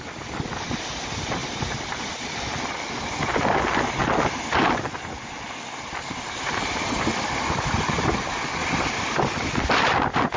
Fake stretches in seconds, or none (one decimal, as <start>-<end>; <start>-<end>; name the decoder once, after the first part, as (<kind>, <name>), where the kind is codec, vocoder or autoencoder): none